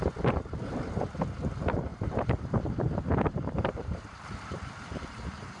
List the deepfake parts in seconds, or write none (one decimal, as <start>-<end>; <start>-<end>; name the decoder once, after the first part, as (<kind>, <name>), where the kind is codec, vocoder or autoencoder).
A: 1.9-5.6 (vocoder, BigVGAN v2)